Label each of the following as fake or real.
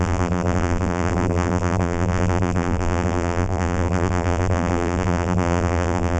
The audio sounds fake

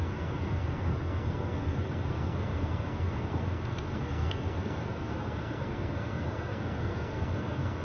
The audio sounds fake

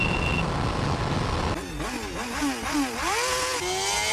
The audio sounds real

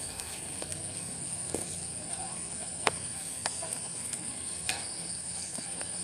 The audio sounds fake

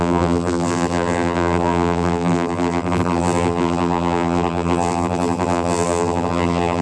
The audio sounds fake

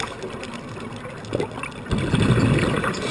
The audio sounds real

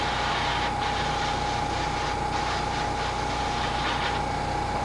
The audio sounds real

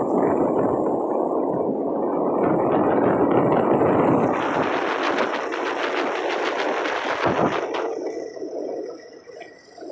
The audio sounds real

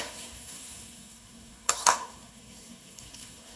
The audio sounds fake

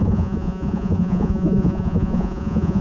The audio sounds fake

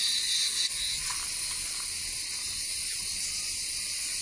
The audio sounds real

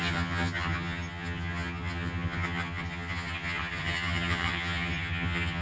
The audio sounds fake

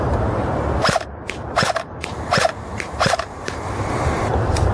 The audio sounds fake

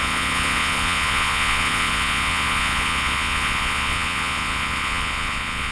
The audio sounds fake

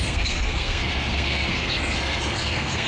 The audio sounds fake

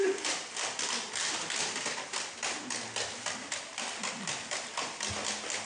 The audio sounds real